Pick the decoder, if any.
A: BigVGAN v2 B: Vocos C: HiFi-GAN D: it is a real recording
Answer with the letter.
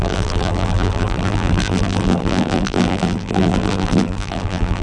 A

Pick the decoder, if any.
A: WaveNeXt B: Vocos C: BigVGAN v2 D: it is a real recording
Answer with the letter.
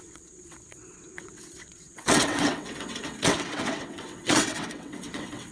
A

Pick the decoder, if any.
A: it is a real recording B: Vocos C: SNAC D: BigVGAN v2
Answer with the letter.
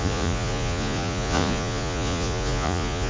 B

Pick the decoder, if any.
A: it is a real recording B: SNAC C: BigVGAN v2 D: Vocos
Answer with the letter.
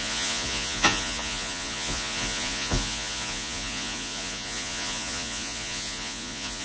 D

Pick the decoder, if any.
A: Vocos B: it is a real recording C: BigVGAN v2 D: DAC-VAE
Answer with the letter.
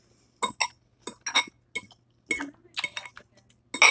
B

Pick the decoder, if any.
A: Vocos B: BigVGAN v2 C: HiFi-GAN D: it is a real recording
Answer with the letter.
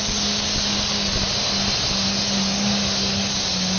D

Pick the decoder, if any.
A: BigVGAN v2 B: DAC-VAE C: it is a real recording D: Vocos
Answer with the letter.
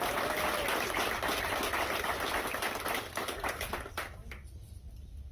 C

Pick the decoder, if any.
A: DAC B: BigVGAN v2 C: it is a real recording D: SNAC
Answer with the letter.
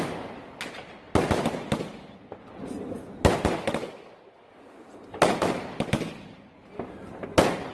C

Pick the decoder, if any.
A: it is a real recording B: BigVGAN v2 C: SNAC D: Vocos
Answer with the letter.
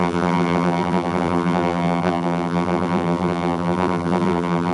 B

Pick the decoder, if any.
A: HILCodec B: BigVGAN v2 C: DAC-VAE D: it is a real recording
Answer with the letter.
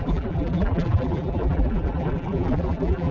B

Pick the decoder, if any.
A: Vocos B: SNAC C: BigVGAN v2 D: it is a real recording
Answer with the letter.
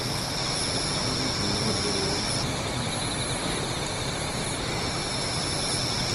D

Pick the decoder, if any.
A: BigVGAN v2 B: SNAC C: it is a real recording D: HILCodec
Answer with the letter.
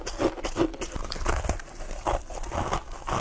C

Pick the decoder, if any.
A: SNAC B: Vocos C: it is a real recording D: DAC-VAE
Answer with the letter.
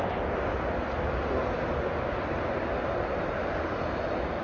C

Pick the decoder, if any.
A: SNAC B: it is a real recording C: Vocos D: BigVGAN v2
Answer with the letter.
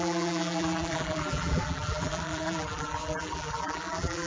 D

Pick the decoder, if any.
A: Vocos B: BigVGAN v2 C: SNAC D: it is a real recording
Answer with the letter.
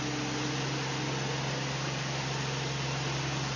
D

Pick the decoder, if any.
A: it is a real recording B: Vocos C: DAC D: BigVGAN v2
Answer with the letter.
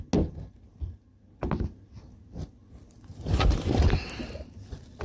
A